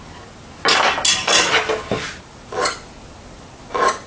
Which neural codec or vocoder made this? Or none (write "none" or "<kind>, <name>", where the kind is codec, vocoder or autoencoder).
none